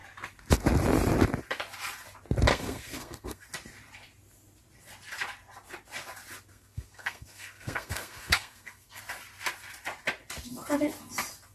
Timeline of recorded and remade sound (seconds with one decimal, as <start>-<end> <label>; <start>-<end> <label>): 0.0-2.5 recorded; 2.5-3.5 remade; 3.5-6.5 recorded; 6.5-9.0 remade; 9.0-11.5 recorded

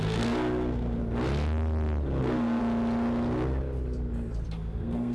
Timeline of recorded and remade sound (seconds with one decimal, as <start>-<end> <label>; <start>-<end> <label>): 0.0-1.0 remade; 1.0-2.2 recorded; 2.2-2.6 remade; 2.6-4.5 recorded; 4.5-5.1 remade

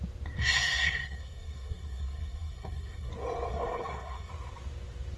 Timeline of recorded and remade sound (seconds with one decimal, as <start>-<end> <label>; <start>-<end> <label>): 0.0-0.4 recorded; 0.4-3.1 remade; 3.1-3.5 recorded; 3.5-4.3 remade; 4.3-5.2 recorded

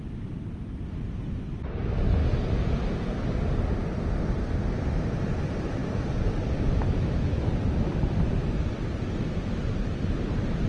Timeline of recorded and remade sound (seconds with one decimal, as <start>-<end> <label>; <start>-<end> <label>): 0.0-10.7 recorded